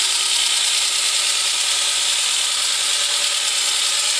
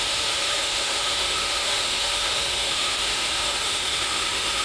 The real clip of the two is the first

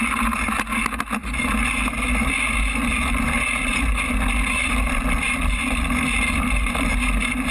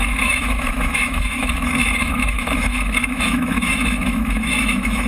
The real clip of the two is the first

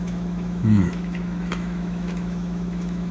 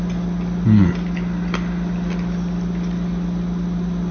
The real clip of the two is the second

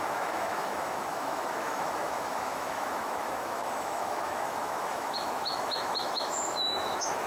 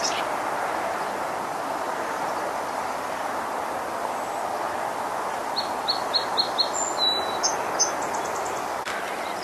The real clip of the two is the second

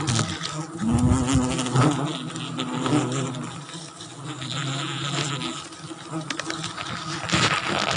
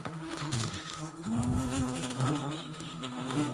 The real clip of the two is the first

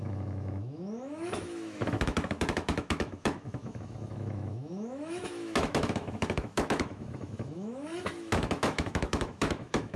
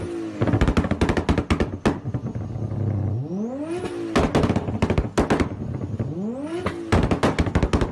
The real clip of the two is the second